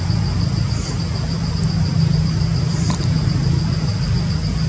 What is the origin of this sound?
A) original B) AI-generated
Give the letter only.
A